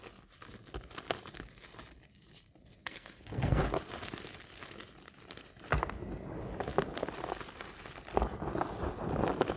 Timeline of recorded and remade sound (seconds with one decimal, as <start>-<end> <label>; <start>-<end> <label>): 0.0-2.8 recorded; 2.8-3.6 remade; 3.6-9.6 recorded